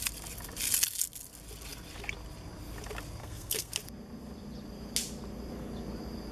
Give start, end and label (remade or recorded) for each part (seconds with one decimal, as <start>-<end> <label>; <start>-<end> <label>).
0.0-3.2 recorded; 3.2-3.7 remade; 3.7-6.3 recorded